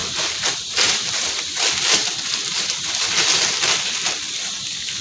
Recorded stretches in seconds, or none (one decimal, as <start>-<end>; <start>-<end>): 3.0-5.0